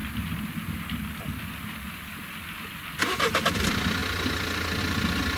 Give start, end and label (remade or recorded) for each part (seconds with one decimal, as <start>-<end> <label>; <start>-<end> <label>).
0.0-5.4 recorded